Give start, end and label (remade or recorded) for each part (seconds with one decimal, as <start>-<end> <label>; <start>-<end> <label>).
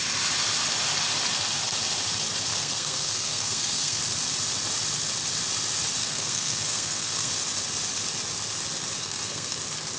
0.0-2.5 recorded; 2.5-4.0 remade; 4.0-6.0 recorded; 6.0-7.3 remade; 7.3-9.0 recorded; 9.0-9.6 remade; 9.6-10.0 recorded